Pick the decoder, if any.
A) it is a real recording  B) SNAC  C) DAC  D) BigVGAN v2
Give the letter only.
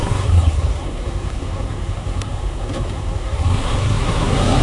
B